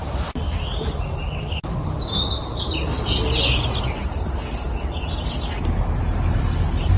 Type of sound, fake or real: real